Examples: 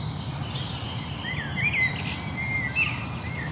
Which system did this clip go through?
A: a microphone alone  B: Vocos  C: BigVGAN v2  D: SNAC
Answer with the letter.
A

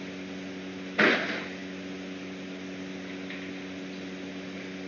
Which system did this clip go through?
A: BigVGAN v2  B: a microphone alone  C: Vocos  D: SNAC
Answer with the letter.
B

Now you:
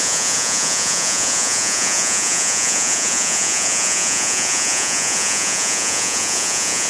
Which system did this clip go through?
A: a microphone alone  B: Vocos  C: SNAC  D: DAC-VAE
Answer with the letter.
B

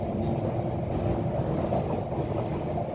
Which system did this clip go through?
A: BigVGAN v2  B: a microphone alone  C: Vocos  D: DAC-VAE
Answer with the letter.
B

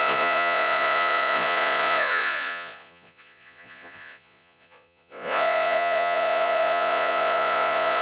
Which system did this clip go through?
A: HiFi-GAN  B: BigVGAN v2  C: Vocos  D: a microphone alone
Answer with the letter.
C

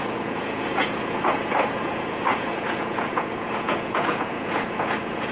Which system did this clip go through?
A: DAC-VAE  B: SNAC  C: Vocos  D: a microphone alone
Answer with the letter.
C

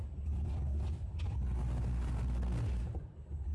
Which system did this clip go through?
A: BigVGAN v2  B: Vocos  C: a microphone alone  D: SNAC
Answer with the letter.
C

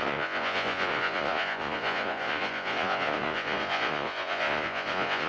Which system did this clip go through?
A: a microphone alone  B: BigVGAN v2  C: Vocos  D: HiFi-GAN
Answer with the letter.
C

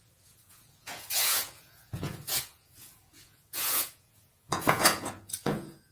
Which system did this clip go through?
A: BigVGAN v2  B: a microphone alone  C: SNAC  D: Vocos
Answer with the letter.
D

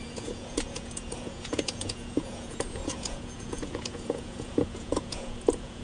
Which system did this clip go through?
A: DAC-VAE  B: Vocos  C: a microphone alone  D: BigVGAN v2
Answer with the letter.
B